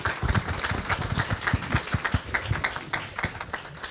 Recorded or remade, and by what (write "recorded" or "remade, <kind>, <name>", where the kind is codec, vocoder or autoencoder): recorded